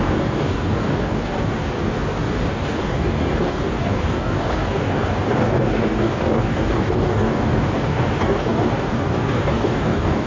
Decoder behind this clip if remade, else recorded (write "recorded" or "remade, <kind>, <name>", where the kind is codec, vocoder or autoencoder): remade, codec, DAC